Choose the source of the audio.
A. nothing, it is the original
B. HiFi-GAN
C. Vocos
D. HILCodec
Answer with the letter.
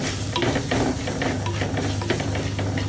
A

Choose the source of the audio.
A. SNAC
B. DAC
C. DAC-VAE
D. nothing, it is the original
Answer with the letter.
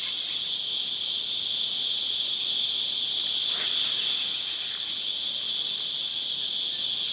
D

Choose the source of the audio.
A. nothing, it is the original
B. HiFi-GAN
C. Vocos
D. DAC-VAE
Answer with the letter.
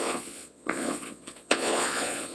C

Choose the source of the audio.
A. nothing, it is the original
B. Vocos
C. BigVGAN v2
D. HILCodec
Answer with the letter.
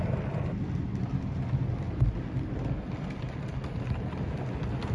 A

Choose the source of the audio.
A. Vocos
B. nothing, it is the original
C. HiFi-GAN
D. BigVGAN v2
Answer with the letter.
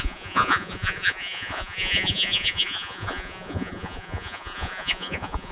A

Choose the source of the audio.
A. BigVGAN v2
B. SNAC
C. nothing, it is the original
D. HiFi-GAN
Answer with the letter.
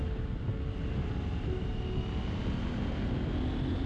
C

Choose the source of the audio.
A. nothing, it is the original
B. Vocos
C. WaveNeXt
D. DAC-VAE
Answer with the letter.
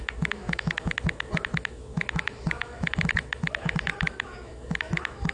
D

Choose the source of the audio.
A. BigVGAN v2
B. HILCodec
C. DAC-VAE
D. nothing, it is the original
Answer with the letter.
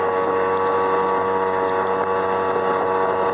D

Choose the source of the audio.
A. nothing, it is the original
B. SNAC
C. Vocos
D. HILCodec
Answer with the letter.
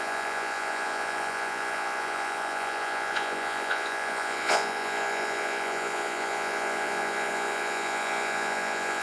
C